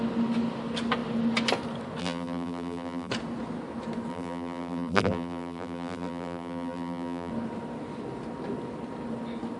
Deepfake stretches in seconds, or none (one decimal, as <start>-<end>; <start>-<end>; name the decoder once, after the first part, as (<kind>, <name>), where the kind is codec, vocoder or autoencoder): 2.0-3.1 (vocoder, BigVGAN v2); 4.1-7.3